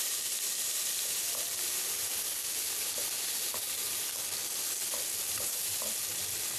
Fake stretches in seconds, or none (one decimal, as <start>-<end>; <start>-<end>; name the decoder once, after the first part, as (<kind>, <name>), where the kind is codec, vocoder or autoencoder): none